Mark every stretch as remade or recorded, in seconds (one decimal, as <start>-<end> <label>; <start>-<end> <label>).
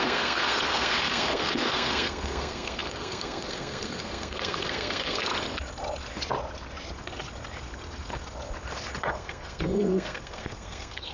0.0-5.3 remade; 5.3-9.0 recorded; 9.0-11.1 remade